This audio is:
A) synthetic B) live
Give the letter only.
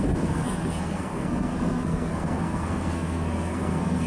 A